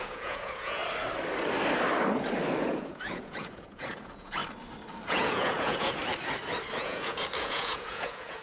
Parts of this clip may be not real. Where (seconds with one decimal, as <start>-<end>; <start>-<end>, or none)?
0.0-0.8; 2.6-4.4; 5.1-6.0; 6.8-8.4